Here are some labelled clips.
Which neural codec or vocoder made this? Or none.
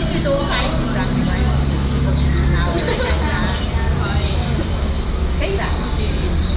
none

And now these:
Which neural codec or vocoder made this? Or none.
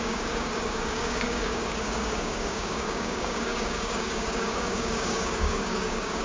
codec, DAC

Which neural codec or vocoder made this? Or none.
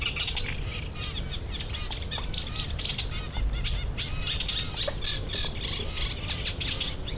none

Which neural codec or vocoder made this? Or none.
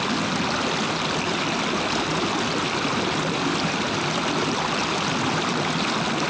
none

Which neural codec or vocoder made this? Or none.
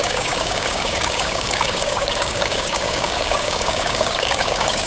codec, DAC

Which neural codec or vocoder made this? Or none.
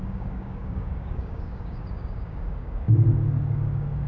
codec, DAC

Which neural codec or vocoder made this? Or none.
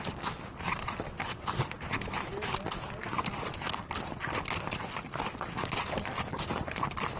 none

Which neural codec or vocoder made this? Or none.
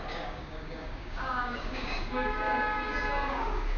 codec, DAC